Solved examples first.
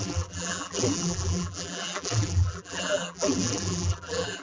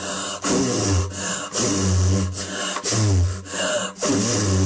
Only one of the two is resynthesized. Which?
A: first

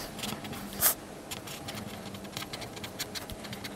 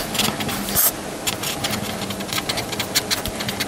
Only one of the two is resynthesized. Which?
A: first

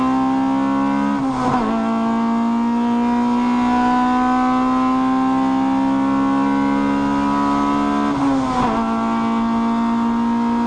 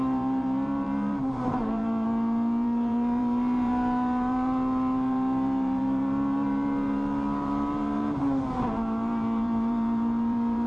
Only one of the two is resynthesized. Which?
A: second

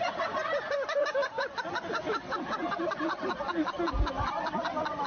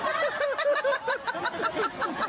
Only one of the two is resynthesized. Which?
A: first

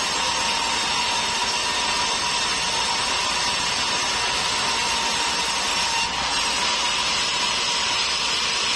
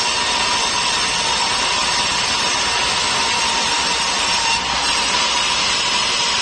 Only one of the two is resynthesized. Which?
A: second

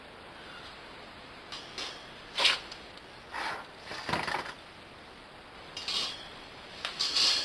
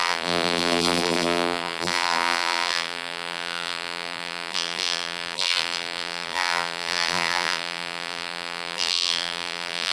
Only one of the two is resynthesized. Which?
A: second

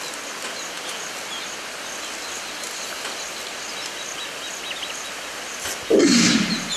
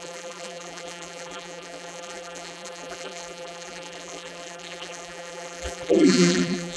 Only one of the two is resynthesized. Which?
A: second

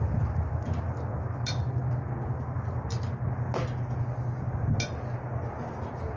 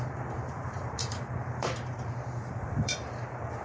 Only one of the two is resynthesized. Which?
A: second